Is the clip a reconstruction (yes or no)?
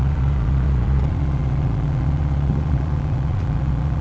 yes